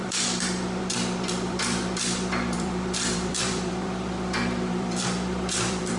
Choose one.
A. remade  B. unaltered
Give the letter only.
A